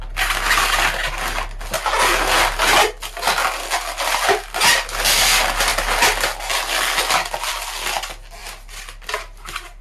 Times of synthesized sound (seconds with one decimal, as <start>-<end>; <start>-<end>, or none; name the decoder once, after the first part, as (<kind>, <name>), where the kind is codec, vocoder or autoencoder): none

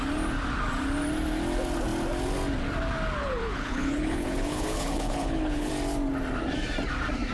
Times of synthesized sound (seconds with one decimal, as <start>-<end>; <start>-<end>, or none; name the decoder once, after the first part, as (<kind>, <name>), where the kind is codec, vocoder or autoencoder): 3.2-5.7 (codec, HILCodec)